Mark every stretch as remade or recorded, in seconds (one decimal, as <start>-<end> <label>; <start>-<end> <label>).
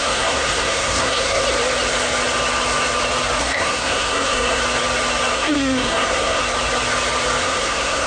0.0-1.4 remade; 1.4-3.4 recorded; 3.4-4.6 remade; 4.6-5.3 recorded; 5.3-6.4 remade; 6.4-7.4 recorded; 7.4-8.1 remade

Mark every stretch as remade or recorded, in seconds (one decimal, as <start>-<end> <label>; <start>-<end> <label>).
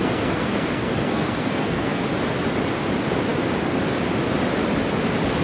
0.0-2.0 remade; 2.0-5.4 recorded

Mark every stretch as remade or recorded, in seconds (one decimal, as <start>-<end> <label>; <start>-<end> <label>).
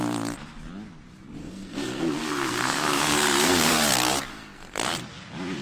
0.0-1.4 recorded; 1.4-3.7 remade; 3.7-4.3 recorded; 4.3-4.9 remade; 4.9-5.6 recorded